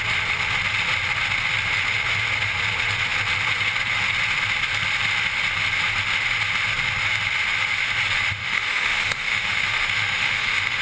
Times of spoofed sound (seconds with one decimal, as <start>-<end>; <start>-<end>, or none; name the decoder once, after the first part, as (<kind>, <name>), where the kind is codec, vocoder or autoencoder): 8.4-10.8 (autoencoder, DAC-VAE)